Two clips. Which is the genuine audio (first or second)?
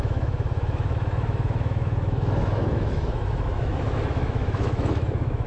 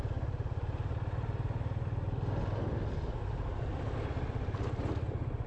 second